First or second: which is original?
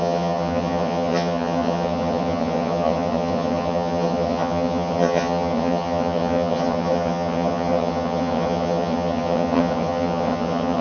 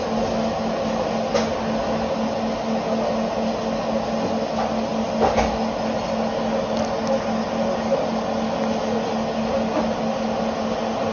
second